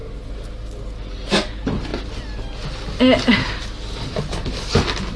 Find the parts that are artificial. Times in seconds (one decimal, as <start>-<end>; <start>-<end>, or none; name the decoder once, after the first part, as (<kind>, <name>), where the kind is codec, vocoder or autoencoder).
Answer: 0.0-1.9 (vocoder, BigVGAN v2)